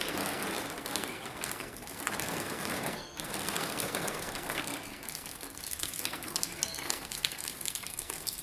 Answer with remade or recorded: remade